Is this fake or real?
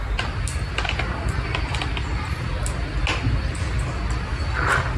real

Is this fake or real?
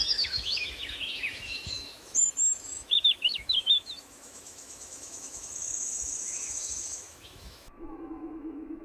fake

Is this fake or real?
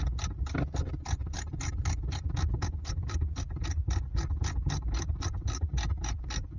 real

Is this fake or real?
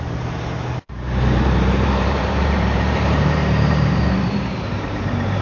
fake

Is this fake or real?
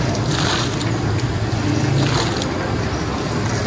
real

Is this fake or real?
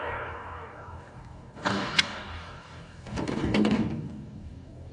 fake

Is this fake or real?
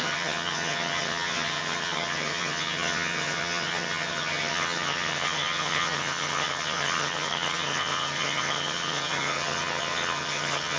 fake